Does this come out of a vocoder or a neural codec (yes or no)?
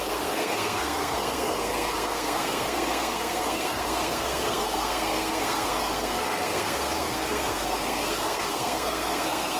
yes